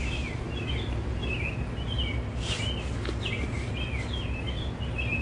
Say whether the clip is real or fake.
real